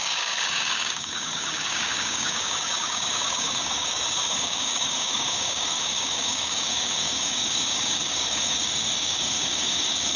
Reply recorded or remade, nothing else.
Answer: remade